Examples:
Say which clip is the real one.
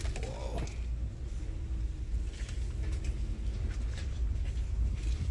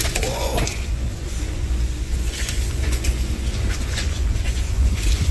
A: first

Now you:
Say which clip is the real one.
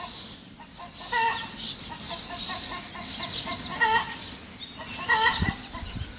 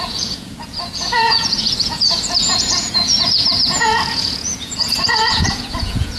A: first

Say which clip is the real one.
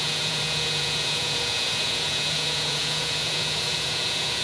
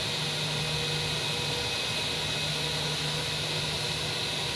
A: second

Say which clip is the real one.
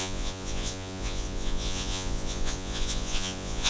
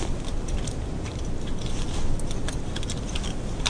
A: second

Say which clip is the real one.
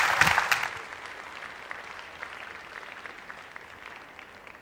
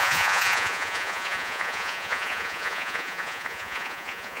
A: first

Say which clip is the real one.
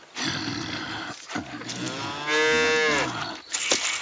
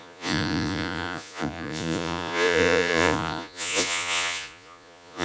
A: first